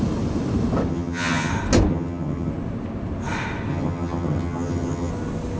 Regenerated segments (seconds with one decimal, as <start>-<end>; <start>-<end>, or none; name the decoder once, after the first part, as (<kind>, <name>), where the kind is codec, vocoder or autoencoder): 0.9-1.5 (vocoder, HiFi-GAN); 1.9-2.5; 3.7-5.1